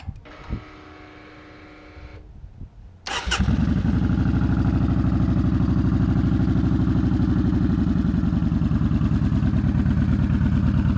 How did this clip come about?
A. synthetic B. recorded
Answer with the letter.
B